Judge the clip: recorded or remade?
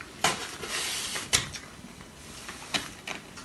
recorded